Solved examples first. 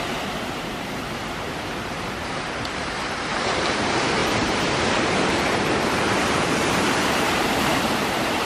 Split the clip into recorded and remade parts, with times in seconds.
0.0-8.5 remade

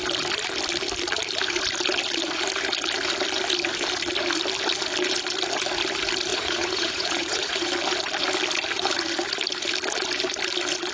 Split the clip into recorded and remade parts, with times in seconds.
0.0-6.3 recorded; 6.3-7.7 remade; 7.7-10.9 recorded

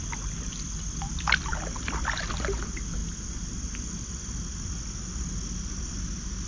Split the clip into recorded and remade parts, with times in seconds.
0.0-3.0 remade; 3.0-5.8 recorded; 5.8-6.5 remade

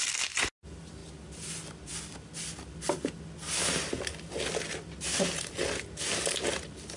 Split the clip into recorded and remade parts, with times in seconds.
0.0-7.0 recorded

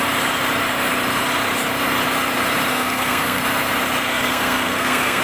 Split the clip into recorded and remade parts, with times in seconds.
0.0-2.7 recorded; 2.7-3.4 remade; 3.4-4.1 recorded; 4.1-5.2 remade

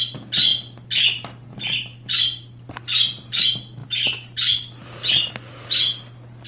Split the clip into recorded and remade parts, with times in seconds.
0.0-6.5 recorded

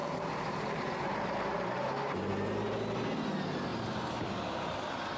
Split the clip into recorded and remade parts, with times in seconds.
0.0-1.8 remade; 1.8-5.2 recorded